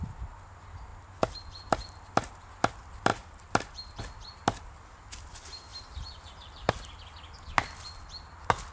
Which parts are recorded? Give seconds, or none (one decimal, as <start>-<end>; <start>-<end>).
0.0-3.1; 4.0-5.7; 6.7-8.7